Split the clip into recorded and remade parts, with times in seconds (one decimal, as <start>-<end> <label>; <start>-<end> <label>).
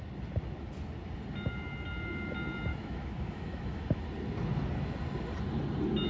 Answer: 0.0-2.7 recorded; 2.7-4.0 remade; 4.0-6.1 recorded